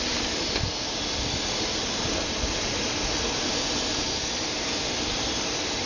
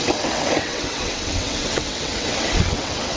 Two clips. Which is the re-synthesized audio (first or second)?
second